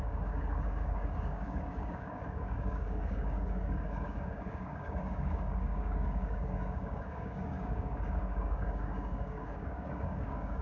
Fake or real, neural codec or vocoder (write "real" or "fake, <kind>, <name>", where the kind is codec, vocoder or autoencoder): fake, codec, DAC